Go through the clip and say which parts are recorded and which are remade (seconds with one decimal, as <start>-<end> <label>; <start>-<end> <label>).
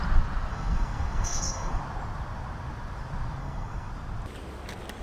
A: 0.0-0.5 recorded; 0.5-1.8 remade; 1.8-3.4 recorded; 3.4-3.9 remade; 3.9-5.0 recorded